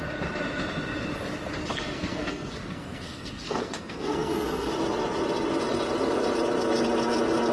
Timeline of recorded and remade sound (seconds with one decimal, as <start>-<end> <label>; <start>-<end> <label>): 0.0-1.7 recorded; 1.7-4.7 remade; 4.7-7.5 recorded